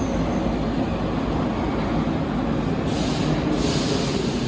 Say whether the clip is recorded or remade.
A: recorded